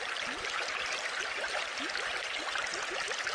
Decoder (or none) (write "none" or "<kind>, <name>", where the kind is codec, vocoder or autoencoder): none